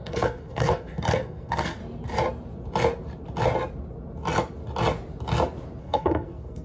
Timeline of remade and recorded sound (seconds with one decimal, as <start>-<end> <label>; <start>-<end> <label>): 0.0-1.8 remade; 1.8-5.8 recorded; 5.8-6.6 remade

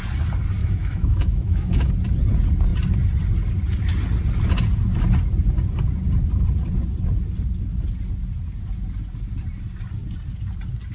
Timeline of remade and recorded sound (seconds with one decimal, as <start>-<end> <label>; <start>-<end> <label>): 0.0-0.6 recorded; 0.6-1.9 remade; 1.9-10.9 recorded